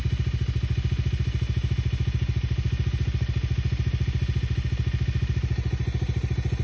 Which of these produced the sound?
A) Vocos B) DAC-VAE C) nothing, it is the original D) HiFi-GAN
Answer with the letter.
C